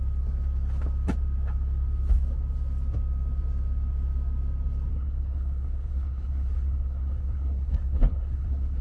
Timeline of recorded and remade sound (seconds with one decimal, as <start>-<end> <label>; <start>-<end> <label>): 0.0-4.9 recorded; 4.9-8.8 remade